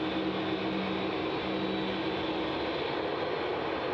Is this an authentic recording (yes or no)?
yes